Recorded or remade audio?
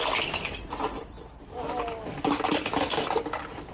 remade